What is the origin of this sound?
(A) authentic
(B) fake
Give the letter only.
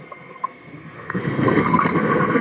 B